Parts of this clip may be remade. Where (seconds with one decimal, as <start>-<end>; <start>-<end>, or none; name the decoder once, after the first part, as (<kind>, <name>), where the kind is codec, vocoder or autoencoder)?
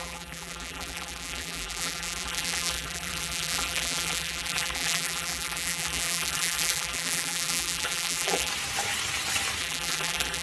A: 0.0-8.5 (vocoder, BigVGAN v2); 9.6-10.4